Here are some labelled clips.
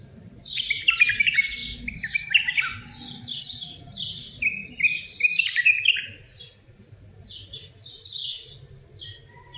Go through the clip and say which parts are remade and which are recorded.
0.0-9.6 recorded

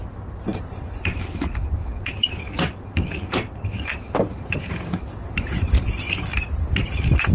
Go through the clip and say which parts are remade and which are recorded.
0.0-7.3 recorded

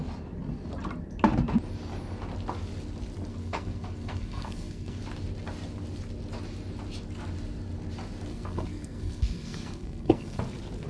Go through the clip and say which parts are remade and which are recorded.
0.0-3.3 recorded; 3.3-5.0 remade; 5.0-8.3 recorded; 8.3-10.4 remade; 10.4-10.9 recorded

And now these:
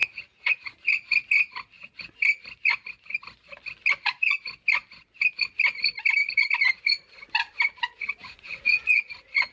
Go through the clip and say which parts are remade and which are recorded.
0.0-0.7 remade; 0.7-8.2 recorded; 8.2-9.5 remade

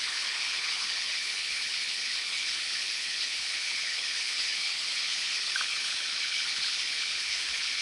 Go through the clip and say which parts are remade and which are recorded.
0.0-7.8 remade

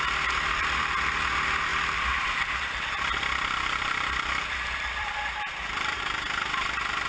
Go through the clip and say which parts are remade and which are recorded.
0.0-1.7 recorded; 1.7-6.0 remade; 6.0-7.1 recorded

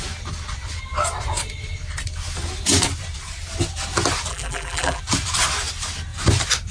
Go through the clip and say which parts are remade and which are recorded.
0.0-4.3 recorded; 4.3-5.0 remade; 5.0-6.7 recorded